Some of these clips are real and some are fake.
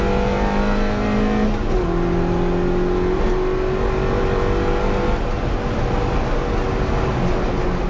real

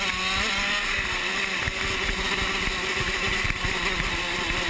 real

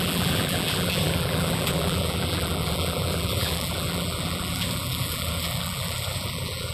fake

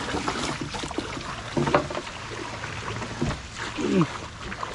real